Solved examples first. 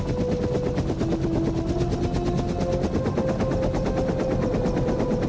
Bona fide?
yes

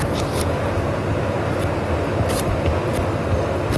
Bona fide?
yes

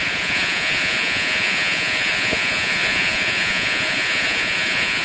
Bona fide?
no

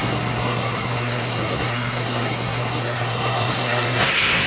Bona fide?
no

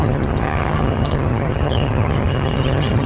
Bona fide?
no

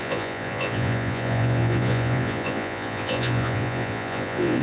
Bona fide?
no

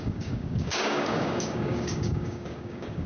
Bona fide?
no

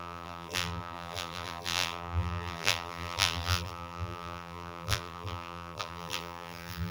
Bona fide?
no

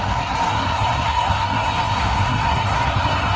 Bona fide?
no